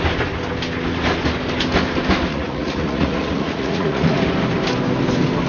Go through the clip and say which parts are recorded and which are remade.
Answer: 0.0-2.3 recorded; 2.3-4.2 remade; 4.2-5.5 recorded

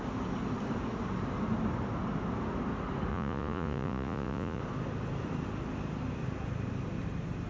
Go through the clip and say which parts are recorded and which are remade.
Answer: 0.0-3.1 recorded; 3.1-4.6 remade; 4.6-7.5 recorded

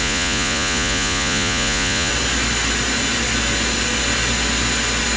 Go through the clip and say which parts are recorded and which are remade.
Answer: 0.0-2.1 remade; 2.1-5.2 recorded

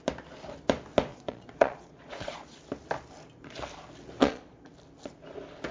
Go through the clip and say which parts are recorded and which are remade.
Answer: 0.0-1.1 recorded; 1.1-2.6 remade; 2.6-4.2 recorded; 4.2-4.7 remade; 4.7-5.7 recorded

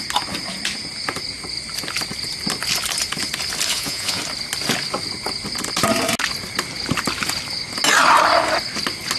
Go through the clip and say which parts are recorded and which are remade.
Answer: 0.0-3.7 recorded; 3.7-4.2 remade; 4.2-9.2 recorded

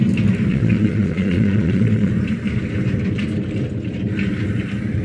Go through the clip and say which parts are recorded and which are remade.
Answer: 0.0-0.5 recorded; 0.5-2.1 remade; 2.1-5.0 recorded

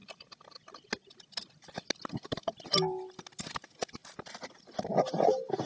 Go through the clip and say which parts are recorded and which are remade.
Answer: 0.0-5.7 recorded